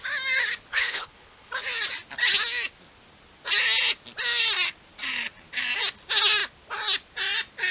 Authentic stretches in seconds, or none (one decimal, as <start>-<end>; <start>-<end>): 0.0-0.7; 1.5-7.7